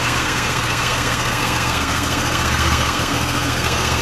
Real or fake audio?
fake